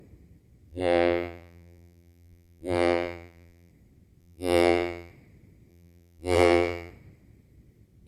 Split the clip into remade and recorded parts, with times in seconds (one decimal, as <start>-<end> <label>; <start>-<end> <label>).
0.0-0.7 recorded; 0.7-3.7 remade; 3.7-4.2 recorded; 4.2-5.1 remade; 5.1-5.7 recorded; 5.7-6.9 remade; 6.9-8.1 recorded

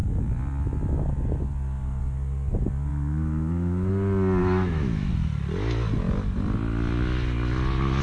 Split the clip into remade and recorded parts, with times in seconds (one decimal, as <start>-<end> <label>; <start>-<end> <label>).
0.0-2.9 recorded; 2.9-3.9 remade; 3.9-4.4 recorded; 4.4-5.1 remade; 5.1-8.0 recorded